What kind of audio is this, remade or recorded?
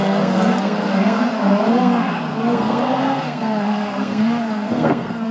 remade